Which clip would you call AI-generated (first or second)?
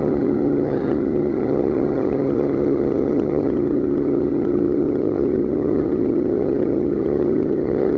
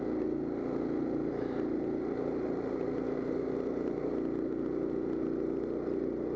first